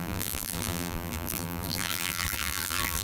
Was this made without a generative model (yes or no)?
no